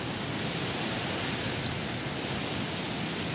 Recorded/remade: recorded